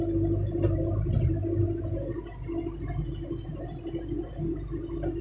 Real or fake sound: real